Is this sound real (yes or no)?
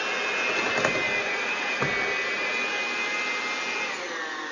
yes